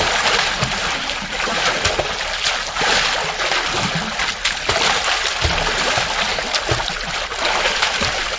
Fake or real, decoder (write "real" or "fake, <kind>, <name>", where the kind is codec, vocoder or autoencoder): real